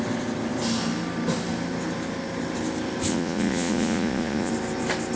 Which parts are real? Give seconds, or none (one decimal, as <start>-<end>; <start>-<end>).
0.0-3.1; 4.5-5.2